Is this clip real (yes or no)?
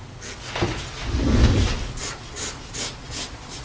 yes